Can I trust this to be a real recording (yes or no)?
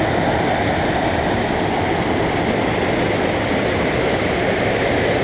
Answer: yes